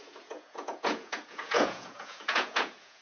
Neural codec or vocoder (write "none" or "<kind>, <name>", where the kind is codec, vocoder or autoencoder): vocoder, Vocos